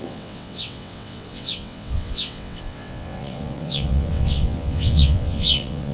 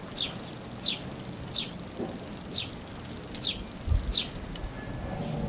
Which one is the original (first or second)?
second